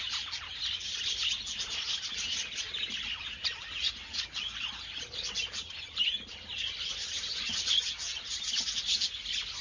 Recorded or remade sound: recorded